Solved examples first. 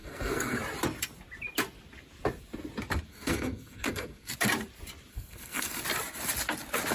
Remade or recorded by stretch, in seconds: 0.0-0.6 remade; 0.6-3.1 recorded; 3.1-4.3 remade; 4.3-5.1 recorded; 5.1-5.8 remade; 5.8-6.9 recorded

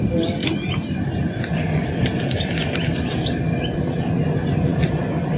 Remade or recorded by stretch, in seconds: 0.0-0.4 recorded; 0.4-3.6 remade; 3.6-4.7 recorded; 4.7-5.4 remade

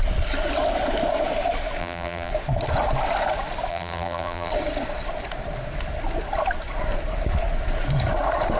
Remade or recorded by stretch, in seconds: 0.0-1.8 recorded; 1.8-2.3 remade; 2.3-3.7 recorded; 3.7-4.5 remade; 4.5-8.6 recorded

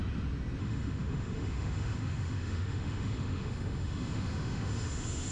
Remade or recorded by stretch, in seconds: 0.0-0.6 recorded; 0.6-5.3 remade

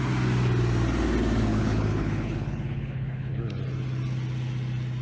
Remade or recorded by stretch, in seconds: 0.0-1.5 recorded; 1.5-3.5 remade; 3.5-5.0 recorded

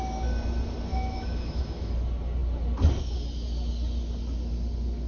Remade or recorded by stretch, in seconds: 0.0-0.9 recorded; 0.9-1.9 remade; 1.9-5.1 recorded

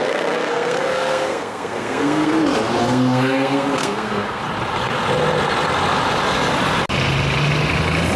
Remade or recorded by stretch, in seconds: 0.0-2.3 remade; 2.3-2.8 recorded; 2.8-4.4 remade; 4.4-8.2 recorded